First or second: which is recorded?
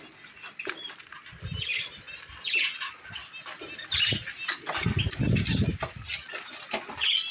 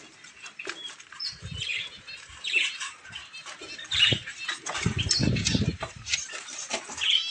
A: first